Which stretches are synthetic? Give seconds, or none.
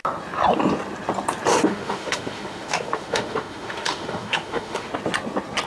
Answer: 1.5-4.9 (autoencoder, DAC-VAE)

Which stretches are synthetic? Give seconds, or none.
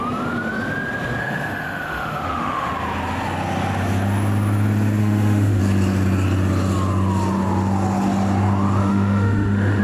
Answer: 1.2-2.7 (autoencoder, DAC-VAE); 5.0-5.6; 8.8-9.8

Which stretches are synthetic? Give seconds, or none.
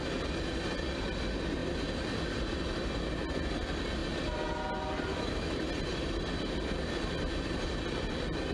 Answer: 5.1-5.6 (autoencoder, DAC-VAE)